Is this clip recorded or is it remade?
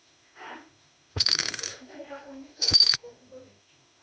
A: remade